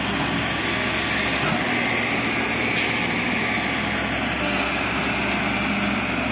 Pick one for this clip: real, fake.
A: real